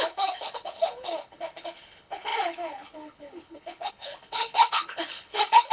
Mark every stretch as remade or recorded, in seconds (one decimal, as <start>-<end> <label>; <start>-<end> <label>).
0.0-5.7 remade